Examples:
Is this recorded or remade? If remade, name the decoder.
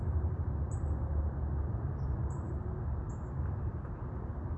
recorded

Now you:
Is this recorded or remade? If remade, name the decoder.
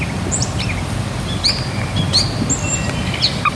recorded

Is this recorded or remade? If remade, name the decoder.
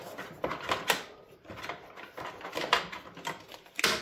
recorded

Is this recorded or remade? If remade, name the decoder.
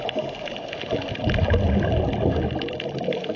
recorded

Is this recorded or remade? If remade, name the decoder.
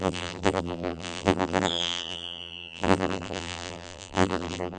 remade, vocoder, BigVGAN v2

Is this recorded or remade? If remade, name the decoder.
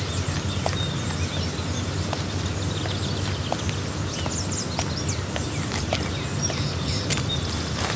recorded